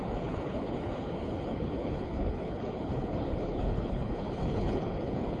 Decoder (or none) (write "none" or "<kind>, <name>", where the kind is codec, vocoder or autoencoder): codec, HILCodec